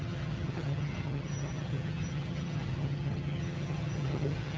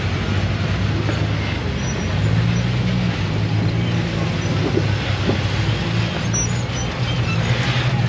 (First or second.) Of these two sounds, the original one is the second